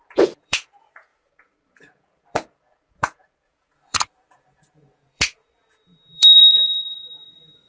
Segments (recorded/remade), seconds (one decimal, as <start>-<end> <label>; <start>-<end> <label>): 0.0-7.7 remade